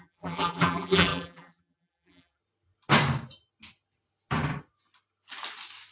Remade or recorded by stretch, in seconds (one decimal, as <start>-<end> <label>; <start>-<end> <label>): 0.0-2.4 remade; 2.4-5.9 recorded